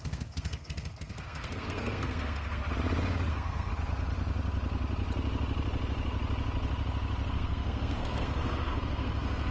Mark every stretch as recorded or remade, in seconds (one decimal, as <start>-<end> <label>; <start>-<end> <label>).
0.0-2.6 remade; 2.6-3.3 recorded; 3.3-3.7 remade; 3.7-7.3 recorded; 7.3-9.5 remade

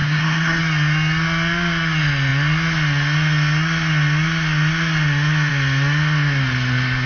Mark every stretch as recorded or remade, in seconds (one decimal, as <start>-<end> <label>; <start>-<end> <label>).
0.0-0.6 remade; 0.6-7.1 recorded